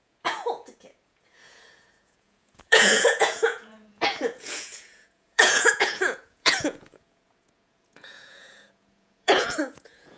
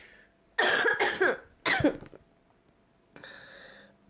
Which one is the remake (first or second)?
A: first